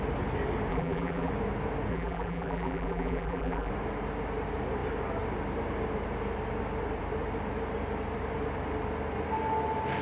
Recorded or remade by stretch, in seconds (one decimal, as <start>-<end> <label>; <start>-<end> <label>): 0.0-0.7 recorded; 0.7-1.3 remade; 1.3-1.9 recorded; 1.9-3.7 remade; 3.7-10.0 recorded